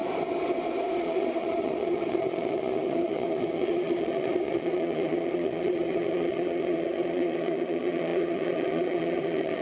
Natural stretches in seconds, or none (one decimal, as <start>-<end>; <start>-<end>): 0.0-1.0